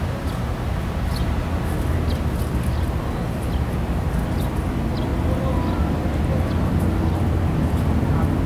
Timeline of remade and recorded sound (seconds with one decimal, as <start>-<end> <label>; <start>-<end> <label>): 0.0-8.5 recorded